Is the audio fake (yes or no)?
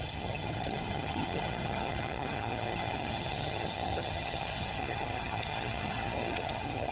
yes